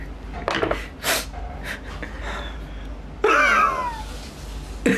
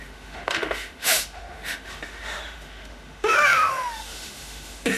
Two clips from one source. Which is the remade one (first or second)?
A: second